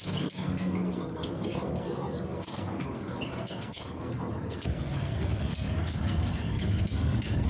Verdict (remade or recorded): remade